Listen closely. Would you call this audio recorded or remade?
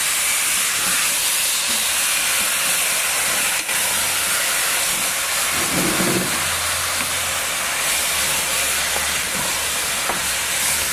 recorded